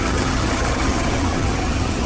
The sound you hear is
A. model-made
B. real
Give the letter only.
A